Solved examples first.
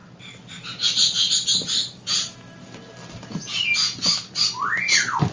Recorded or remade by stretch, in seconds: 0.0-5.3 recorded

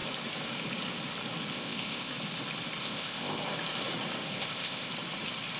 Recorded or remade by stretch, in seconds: 0.0-1.5 recorded; 1.5-2.1 remade; 2.1-2.8 recorded; 2.8-3.4 remade; 3.4-4.3 recorded; 4.3-4.9 remade; 4.9-5.6 recorded

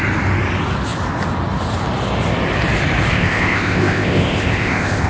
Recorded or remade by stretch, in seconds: 0.0-3.1 recorded; 3.1-5.1 remade

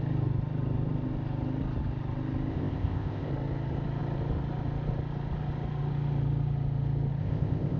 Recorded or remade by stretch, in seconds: 0.0-2.5 recorded; 2.5-3.3 remade; 3.3-7.2 recorded; 7.2-7.8 remade

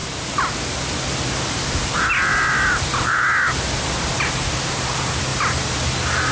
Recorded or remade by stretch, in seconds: 0.0-6.3 recorded

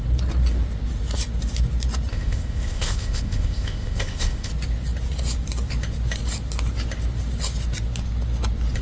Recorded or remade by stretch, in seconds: 0.0-2.1 recorded; 2.1-4.5 remade; 4.5-8.8 recorded

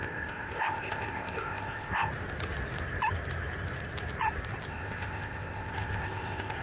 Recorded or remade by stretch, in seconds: 0.0-2.1 remade; 2.1-4.7 recorded; 4.7-6.6 remade

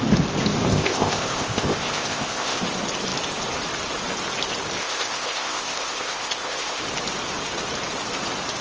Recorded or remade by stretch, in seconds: 0.0-0.7 recorded; 0.7-2.6 remade; 2.6-4.8 recorded; 4.8-6.8 remade; 6.8-8.6 recorded